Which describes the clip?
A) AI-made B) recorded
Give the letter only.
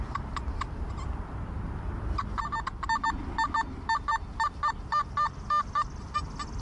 B